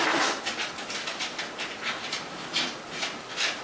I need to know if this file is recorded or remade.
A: recorded